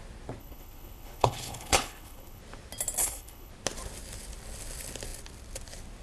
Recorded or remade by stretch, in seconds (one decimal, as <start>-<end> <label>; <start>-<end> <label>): 0.0-0.4 recorded; 0.4-2.4 remade; 2.4-3.0 recorded; 3.0-3.5 remade; 3.5-6.0 recorded